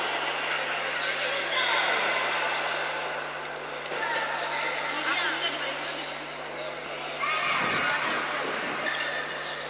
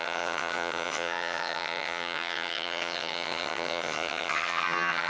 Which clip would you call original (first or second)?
first